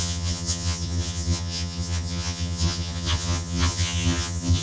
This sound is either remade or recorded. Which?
remade